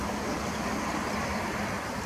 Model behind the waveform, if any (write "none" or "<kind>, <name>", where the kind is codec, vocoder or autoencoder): vocoder, BigVGAN v2